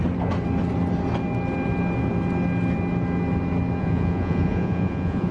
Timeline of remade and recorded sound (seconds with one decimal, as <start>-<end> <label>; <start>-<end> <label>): 0.0-3.8 recorded; 3.8-5.3 remade